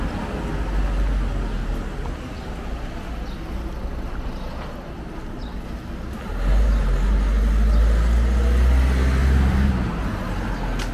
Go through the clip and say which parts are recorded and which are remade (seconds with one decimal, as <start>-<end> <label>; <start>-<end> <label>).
0.0-9.2 recorded; 9.2-9.7 remade; 9.7-10.9 recorded